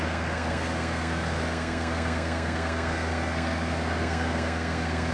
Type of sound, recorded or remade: remade